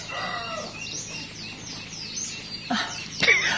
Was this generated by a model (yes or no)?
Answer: no